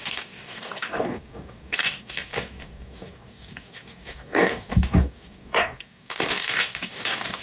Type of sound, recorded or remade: remade